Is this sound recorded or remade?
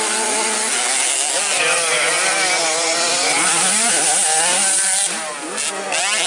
recorded